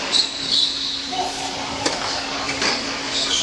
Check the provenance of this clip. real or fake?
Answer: fake